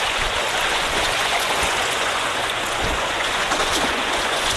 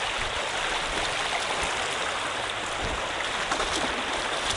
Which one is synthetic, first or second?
first